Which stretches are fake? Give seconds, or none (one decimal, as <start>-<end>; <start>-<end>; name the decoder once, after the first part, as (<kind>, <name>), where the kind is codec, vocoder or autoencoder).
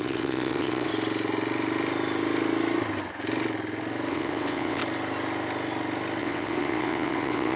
0.0-0.9 (vocoder, WaveNeXt); 4.1-4.8; 6.2-7.6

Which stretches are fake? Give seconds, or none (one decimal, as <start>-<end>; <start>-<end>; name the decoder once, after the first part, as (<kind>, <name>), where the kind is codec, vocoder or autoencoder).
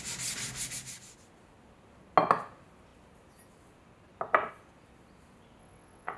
5.6-6.2 (vocoder, WaveNeXt)